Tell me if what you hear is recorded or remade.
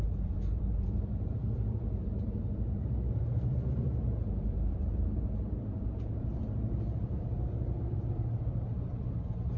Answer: remade